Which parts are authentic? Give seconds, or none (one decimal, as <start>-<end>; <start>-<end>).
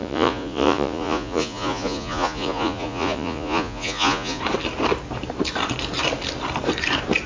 4.4-7.3